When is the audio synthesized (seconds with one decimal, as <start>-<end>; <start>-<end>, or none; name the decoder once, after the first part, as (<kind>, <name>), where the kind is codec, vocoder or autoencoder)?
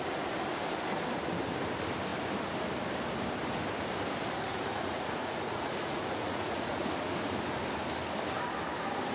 4.5-6.9 (vocoder, Vocos)